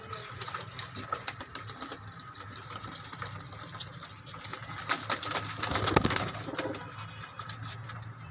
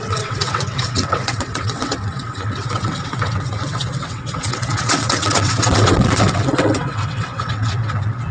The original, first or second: first